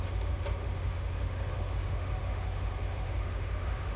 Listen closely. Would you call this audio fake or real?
fake